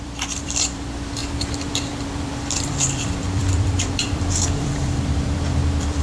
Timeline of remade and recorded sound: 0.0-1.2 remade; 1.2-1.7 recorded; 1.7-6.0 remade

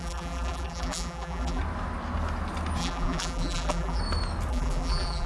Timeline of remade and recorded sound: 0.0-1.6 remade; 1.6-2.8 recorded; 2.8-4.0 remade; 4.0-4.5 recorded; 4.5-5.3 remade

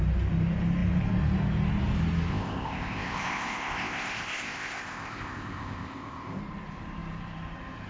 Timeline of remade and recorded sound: 0.0-2.3 recorded; 2.3-6.4 remade; 6.4-7.9 recorded